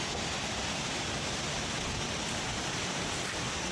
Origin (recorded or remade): recorded